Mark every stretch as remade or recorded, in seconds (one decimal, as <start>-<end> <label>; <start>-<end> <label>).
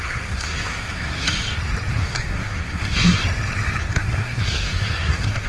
0.0-1.3 remade; 1.3-1.9 recorded; 1.9-3.2 remade; 3.2-3.8 recorded; 3.8-5.5 remade